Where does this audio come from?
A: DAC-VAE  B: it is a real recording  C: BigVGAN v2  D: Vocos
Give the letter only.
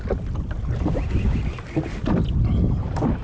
B